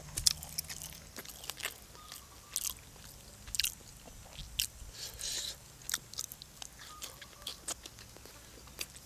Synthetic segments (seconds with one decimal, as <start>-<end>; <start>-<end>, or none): none